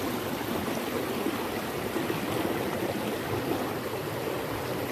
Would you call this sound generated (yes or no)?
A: no